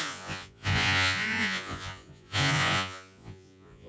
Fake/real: fake